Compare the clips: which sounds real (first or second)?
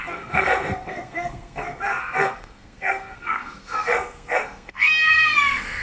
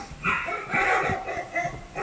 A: second